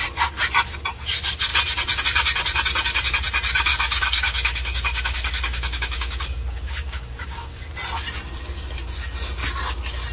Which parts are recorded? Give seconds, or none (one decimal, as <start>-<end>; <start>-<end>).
0.0-3.7; 7.7-10.1